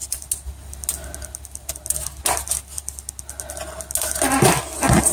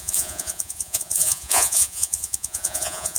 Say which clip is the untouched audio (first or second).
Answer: first